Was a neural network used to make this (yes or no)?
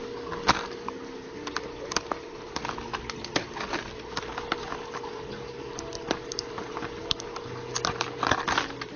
no